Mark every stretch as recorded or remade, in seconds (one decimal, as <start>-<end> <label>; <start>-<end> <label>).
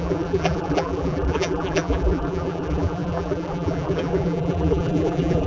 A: 0.0-5.5 remade